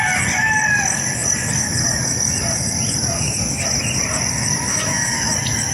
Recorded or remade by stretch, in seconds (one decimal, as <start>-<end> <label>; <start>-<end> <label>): 0.0-4.7 recorded; 4.7-5.3 remade; 5.3-5.7 recorded